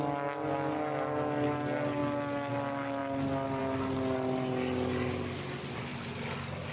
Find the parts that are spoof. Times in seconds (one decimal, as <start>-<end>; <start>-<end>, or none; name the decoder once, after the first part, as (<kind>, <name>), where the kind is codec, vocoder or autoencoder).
none